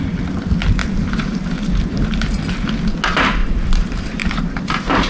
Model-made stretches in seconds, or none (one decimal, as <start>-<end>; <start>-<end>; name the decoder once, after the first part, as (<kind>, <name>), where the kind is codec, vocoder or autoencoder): 0.8-2.4 (vocoder, BigVGAN v2); 3.4-5.1